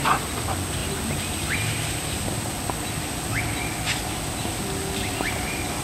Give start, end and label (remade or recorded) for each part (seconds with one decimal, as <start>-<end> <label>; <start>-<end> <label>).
0.0-5.8 recorded